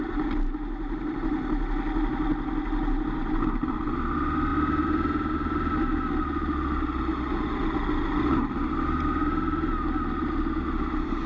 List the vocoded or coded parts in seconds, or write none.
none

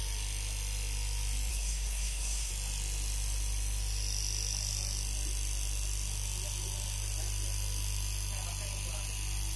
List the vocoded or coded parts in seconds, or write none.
1.5-2.5 (codec, SNAC)